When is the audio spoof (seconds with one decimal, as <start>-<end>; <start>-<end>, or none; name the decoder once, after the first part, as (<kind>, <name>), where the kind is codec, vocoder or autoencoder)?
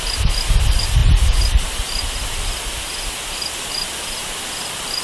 none